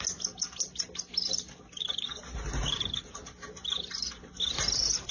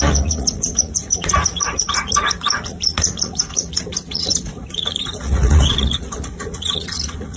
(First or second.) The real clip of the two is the first